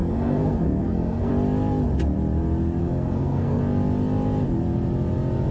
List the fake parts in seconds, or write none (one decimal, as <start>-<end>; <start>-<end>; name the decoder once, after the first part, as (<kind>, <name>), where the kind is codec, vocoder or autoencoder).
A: 0.0-1.3 (codec, SNAC); 2.8-3.6